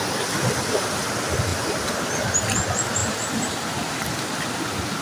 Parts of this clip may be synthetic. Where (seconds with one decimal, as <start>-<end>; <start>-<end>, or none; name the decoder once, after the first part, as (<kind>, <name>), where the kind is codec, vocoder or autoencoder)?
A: 1.5-2.1 (vocoder, BigVGAN v2); 3.0-4.6